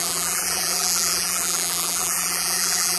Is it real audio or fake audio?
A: fake